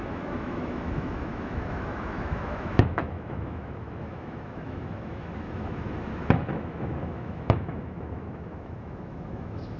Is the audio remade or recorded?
remade